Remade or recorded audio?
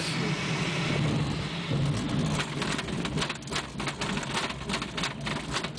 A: recorded